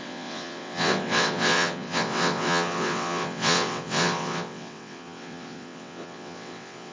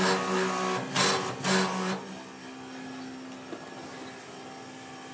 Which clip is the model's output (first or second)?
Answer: first